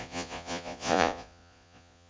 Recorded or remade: remade